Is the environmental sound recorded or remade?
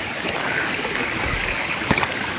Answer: remade